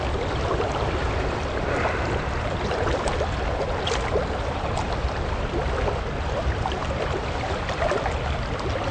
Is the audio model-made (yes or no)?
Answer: no